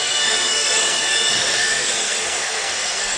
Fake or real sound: fake